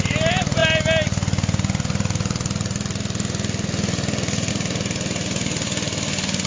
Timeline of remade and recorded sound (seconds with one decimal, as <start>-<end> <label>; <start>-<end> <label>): 0.0-6.5 recorded